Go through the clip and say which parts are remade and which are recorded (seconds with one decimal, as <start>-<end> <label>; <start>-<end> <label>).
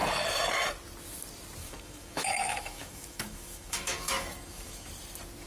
0.0-1.6 recorded; 1.6-4.9 remade; 4.9-5.5 recorded